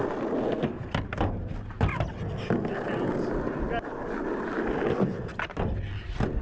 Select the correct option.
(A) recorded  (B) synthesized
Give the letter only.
A